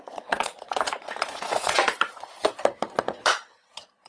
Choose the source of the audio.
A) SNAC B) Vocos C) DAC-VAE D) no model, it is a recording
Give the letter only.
B